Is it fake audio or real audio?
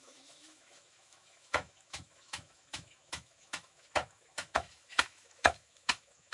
fake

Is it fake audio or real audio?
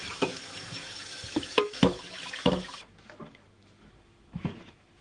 fake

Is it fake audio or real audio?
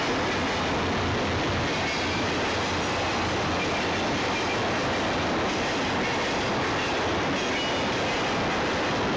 real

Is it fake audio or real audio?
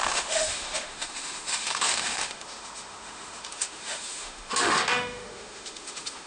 fake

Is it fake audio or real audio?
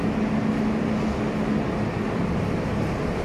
real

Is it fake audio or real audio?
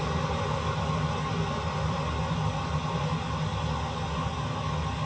real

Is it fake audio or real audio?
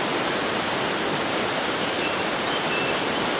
real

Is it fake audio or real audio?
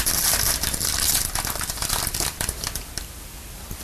real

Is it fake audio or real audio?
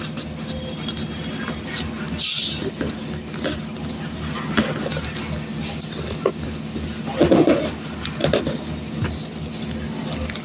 real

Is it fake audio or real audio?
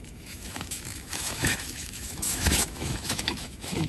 fake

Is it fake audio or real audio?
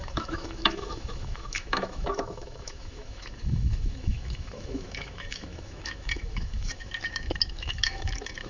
fake